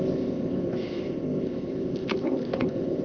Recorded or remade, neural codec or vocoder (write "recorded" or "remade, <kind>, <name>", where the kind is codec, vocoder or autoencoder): remade, codec, ZipCodec